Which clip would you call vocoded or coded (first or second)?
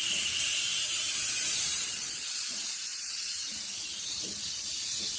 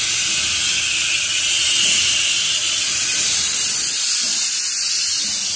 first